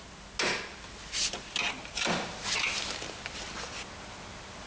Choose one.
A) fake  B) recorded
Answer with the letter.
B